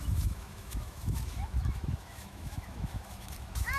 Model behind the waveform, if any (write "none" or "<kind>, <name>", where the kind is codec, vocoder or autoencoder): autoencoder, DAC-VAE